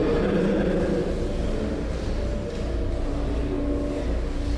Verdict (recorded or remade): recorded